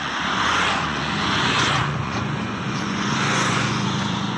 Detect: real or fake fake